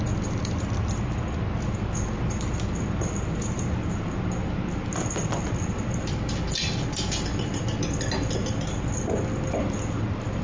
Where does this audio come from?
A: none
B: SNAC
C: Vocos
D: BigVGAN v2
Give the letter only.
A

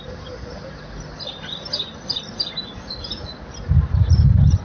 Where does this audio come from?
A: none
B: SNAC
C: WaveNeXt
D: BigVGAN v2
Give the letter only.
A